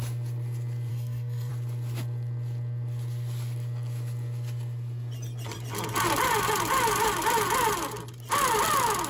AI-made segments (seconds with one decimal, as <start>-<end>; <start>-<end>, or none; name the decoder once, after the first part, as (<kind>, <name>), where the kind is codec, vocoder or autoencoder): 0.9-1.5 (codec, SNAC)